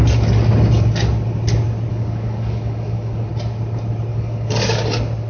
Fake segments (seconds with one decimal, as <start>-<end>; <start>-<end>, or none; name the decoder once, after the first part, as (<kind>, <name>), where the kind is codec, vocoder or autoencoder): 1.9-3.3 (codec, DAC); 4.1-4.8